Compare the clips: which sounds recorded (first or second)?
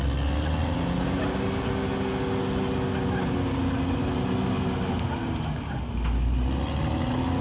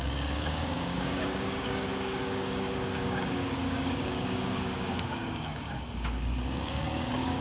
first